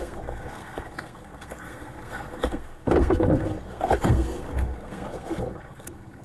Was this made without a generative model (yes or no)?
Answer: no